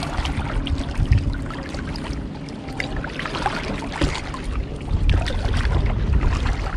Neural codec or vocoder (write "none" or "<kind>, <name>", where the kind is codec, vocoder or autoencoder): none